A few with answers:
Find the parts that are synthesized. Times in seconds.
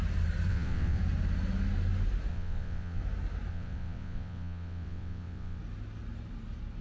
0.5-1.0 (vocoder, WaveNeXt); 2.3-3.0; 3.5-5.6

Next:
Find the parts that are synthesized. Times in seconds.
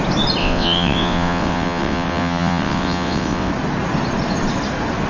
0.4-3.5 (vocoder, WaveNeXt)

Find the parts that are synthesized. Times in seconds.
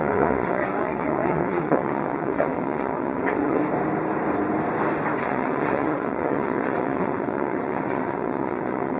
0.0-3.6 (vocoder, WaveNeXt); 5.2-9.0